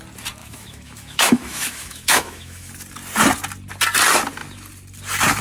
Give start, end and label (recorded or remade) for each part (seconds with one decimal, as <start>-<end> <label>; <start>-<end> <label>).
0.0-0.4 recorded; 0.4-2.7 remade; 2.7-5.4 recorded